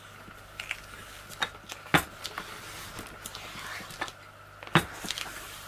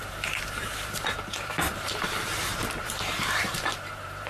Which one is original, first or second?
first